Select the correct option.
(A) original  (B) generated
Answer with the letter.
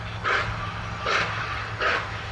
A